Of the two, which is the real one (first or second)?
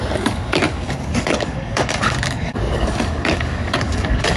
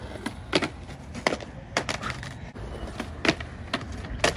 second